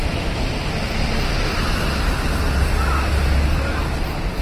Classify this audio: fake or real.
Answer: real